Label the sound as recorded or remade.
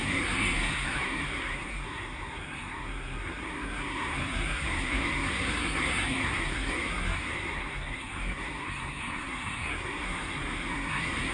remade